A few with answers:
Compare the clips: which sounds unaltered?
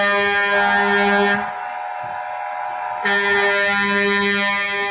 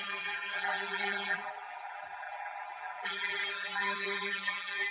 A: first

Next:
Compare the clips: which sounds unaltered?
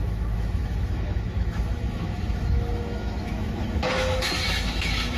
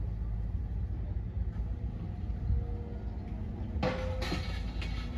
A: second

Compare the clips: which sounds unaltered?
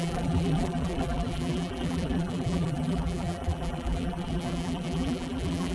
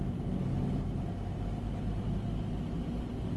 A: second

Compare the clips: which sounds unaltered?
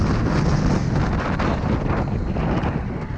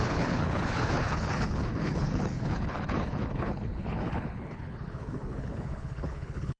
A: first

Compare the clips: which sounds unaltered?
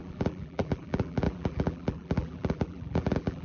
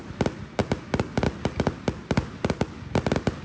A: second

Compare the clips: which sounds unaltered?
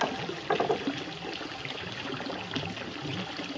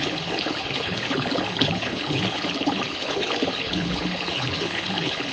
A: first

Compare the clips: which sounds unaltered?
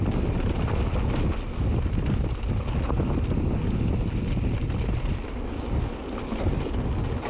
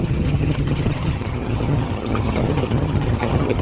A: first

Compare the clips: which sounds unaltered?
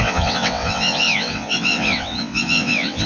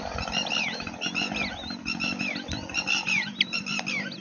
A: second